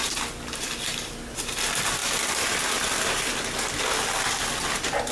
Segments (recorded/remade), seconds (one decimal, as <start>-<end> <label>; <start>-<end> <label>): 0.0-5.1 recorded